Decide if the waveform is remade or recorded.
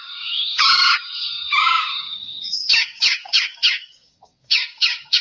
remade